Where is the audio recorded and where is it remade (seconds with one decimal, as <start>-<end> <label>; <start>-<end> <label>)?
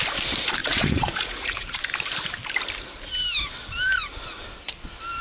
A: 0.0-0.6 recorded; 0.6-1.8 remade; 1.8-5.2 recorded